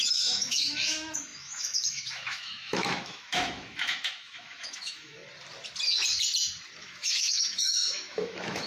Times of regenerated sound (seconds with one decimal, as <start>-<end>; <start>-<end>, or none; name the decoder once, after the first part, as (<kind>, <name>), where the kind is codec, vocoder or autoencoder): 0.0-5.2 (autoencoder, DAC-VAE); 6.8-8.7